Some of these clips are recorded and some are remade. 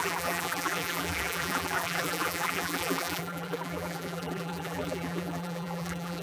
remade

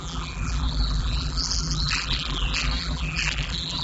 remade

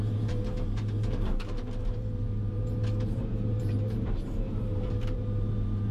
remade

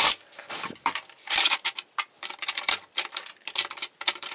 remade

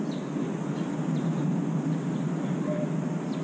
recorded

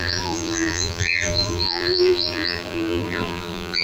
remade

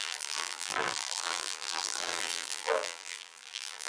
remade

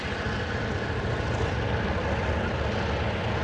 recorded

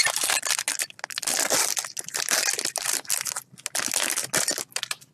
recorded